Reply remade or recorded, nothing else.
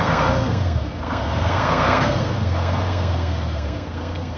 remade